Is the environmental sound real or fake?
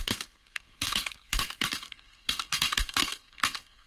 fake